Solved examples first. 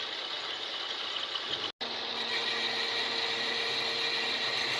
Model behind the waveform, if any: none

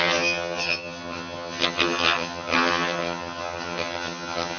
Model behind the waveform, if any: vocoder, HiFi-GAN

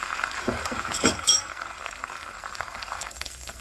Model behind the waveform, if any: codec, SNAC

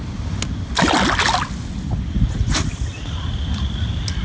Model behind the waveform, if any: none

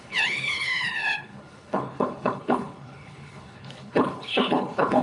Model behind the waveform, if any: codec, HILCodec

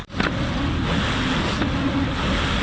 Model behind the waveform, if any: none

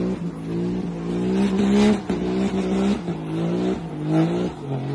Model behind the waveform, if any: none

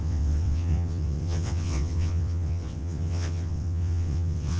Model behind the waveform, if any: vocoder, WaveNeXt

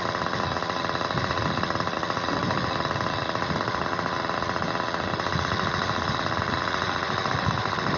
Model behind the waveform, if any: none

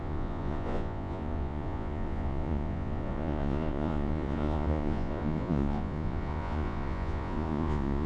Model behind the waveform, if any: vocoder, Vocos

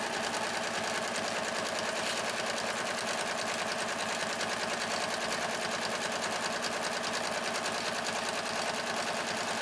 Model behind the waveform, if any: none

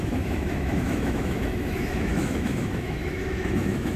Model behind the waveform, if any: autoencoder, DAC-VAE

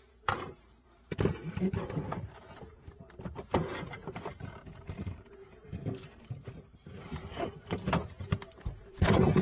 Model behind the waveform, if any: vocoder, BigVGAN v2